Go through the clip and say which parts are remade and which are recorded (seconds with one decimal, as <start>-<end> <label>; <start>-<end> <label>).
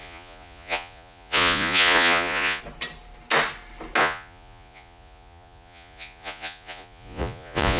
0.0-2.6 remade; 2.6-4.0 recorded; 4.0-7.8 remade